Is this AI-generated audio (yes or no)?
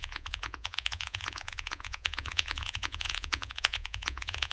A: yes